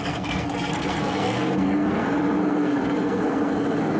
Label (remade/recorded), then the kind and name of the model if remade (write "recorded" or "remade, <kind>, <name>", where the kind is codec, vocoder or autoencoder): remade, codec, SNAC